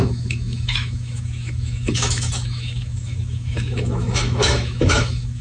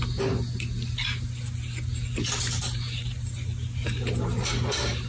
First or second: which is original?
second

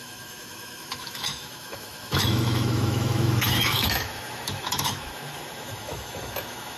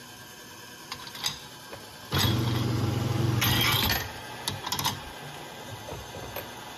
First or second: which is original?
second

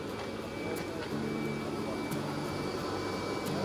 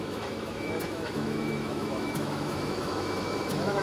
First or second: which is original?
first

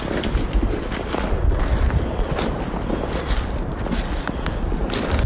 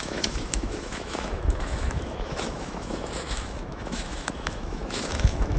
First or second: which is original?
first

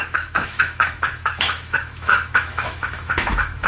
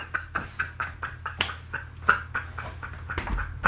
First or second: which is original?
second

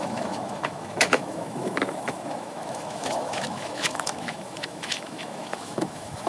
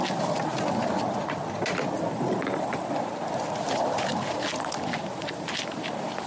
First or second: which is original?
second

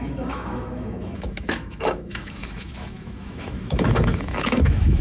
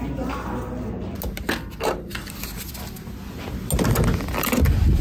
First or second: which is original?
second